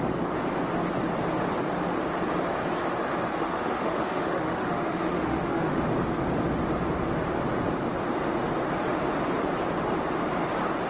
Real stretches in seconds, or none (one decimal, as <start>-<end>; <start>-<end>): 0.0-3.3; 5.8-10.9